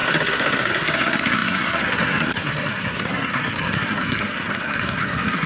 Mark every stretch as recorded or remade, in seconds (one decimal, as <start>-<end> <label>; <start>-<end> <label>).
0.0-5.5 remade